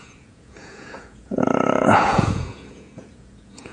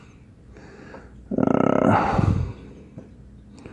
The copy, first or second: first